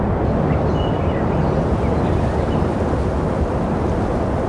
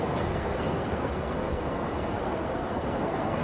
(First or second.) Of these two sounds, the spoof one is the second